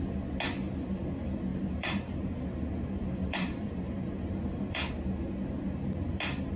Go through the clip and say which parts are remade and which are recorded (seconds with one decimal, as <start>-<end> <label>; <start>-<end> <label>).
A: 0.0-1.5 recorded; 1.5-4.9 remade; 4.9-6.6 recorded